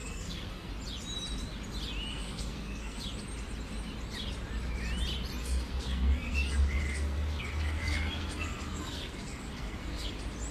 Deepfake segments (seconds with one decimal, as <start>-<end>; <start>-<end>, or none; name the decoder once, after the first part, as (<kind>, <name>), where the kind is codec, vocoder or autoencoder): 0.0-0.7 (codec, SNAC); 2.1-3.0; 5.4-10.1